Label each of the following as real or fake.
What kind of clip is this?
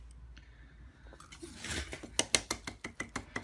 real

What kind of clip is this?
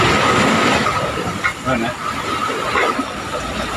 real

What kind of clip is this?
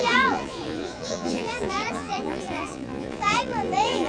fake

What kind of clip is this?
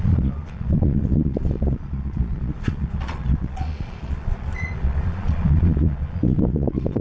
fake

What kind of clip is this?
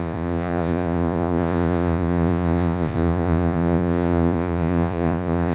fake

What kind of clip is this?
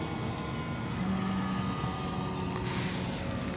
real